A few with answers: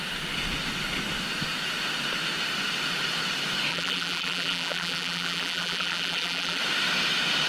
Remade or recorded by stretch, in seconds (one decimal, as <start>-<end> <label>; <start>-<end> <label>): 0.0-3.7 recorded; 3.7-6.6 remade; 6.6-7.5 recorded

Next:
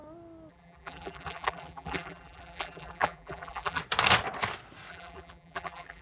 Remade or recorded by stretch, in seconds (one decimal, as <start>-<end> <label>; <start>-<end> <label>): 0.0-0.5 recorded; 0.5-3.8 remade; 3.8-4.9 recorded; 4.9-6.0 remade

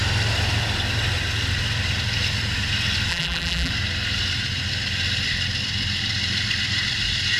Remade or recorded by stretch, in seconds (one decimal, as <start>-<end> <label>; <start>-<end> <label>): 0.0-3.1 recorded; 3.1-3.7 remade; 3.7-7.4 recorded

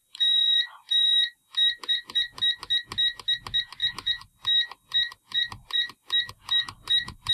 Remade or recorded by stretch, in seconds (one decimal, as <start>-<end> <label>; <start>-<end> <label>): 0.0-2.4 remade; 2.4-3.8 recorded; 3.8-7.3 remade

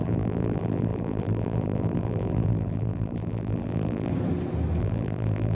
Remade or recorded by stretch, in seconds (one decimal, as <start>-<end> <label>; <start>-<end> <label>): 0.0-4.1 remade; 4.1-4.8 recorded; 4.8-5.5 remade